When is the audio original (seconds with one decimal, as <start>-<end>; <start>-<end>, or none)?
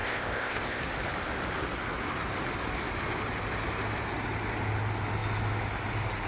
0.8-6.3